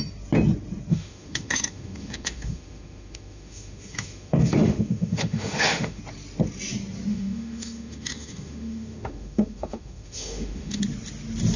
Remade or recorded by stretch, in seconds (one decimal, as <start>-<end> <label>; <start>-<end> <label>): 0.0-0.9 recorded; 0.9-6.0 remade; 6.0-7.1 recorded; 7.1-10.8 remade; 10.8-11.6 recorded